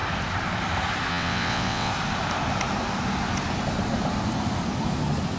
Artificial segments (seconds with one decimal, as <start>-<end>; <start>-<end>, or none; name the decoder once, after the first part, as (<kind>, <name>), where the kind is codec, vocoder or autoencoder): 1.1-1.9 (vocoder, WaveNeXt)